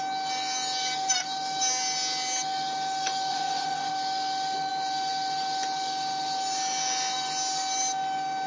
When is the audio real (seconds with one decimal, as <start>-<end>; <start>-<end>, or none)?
0.0-3.3; 3.9-8.5